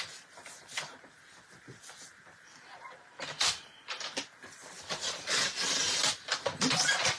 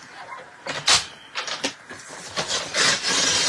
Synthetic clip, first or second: first